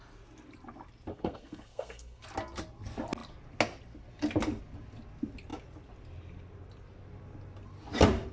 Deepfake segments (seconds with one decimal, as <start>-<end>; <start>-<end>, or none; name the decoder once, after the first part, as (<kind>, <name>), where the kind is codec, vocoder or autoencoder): 1.1-2.2 (codec, SNAC)